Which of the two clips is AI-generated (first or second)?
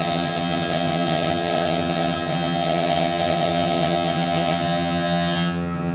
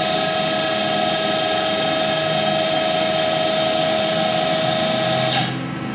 first